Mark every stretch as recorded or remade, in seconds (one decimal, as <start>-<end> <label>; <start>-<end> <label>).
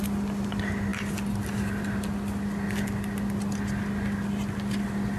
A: 0.0-5.2 recorded